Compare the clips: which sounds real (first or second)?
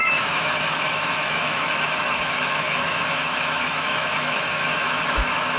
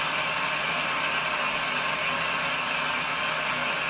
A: second